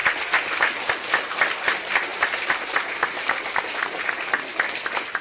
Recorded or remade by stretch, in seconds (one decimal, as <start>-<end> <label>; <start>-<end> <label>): 0.0-2.1 recorded; 2.1-4.1 remade; 4.1-5.2 recorded